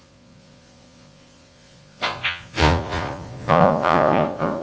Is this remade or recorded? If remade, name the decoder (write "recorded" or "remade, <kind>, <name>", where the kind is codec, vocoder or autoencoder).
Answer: remade, vocoder, Vocos